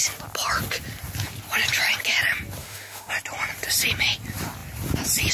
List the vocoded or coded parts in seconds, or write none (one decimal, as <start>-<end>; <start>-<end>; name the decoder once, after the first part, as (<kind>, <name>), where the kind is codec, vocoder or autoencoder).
2.6-3.1 (autoencoder, DAC-VAE)